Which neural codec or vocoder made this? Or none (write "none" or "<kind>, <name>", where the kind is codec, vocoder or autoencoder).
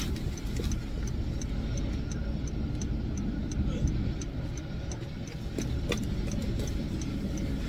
none